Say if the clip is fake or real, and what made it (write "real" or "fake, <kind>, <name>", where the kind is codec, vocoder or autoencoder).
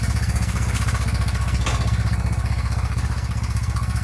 fake, codec, SNAC